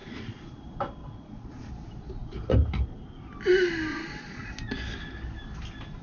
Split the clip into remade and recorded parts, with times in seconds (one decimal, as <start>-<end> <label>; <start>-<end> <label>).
0.0-0.6 remade; 0.6-1.0 recorded; 1.0-1.7 remade; 1.7-3.9 recorded; 3.9-4.5 remade; 4.5-6.0 recorded